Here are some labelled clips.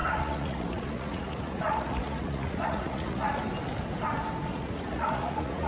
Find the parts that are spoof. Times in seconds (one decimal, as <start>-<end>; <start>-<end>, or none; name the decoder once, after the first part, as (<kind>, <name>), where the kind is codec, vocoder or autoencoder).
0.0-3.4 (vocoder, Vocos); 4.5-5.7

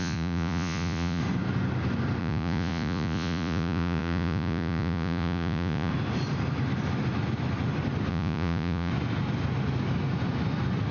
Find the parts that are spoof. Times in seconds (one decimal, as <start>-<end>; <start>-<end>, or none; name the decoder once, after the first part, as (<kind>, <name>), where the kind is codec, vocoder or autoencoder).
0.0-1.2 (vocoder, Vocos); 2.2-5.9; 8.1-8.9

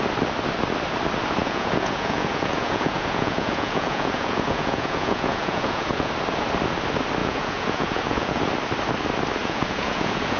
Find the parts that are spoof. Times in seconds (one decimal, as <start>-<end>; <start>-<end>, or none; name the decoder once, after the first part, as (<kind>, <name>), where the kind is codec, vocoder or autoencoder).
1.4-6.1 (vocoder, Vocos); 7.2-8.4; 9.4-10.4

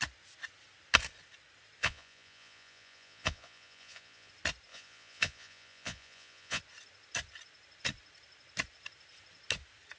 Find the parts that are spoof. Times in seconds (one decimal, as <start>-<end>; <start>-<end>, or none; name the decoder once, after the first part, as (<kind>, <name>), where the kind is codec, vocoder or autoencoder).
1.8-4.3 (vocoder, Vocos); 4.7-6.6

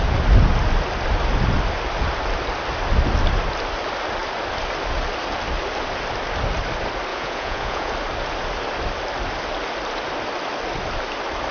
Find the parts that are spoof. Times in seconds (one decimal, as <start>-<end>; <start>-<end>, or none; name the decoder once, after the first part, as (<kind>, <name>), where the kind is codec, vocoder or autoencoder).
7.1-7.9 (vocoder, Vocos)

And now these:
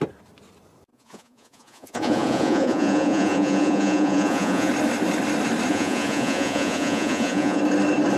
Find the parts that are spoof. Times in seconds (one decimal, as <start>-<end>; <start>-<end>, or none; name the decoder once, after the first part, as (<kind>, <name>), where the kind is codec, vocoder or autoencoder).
0.9-4.7 (vocoder, Vocos); 5.7-7.6